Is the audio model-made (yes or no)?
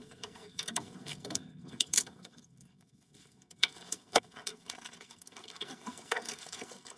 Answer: yes